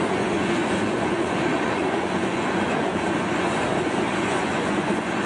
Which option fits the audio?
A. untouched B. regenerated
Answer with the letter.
B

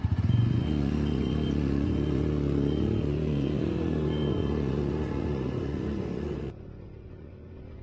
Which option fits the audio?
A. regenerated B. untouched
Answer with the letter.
A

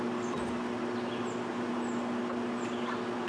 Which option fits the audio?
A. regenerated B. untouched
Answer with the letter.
B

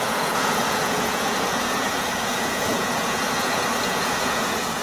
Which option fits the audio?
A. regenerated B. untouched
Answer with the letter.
A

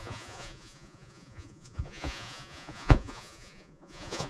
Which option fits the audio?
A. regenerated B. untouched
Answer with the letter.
A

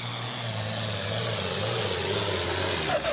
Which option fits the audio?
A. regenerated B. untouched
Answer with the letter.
B